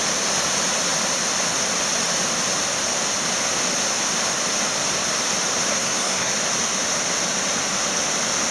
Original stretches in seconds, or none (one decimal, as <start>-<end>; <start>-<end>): 0.0-5.7; 6.3-8.5

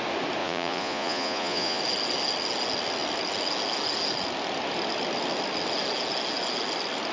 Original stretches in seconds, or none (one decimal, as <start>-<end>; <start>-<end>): 0.0-0.4; 1.8-7.1

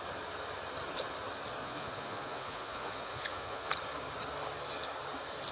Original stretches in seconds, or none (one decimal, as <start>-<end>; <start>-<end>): 0.0-1.6; 3.7-5.5

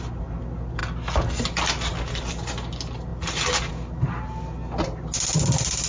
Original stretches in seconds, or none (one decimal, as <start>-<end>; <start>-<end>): 0.0-5.9

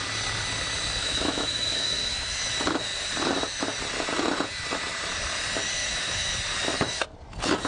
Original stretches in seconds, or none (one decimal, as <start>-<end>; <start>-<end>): 0.0-1.0; 2.5-5.8; 6.3-7.7